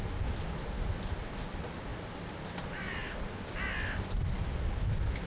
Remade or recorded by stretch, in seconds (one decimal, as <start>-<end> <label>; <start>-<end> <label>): 0.0-5.3 recorded